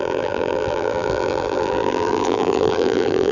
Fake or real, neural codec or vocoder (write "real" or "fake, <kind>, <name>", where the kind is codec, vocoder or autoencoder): fake, vocoder, BigVGAN v2